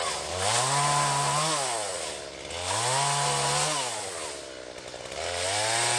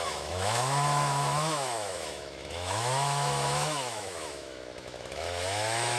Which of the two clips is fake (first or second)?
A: second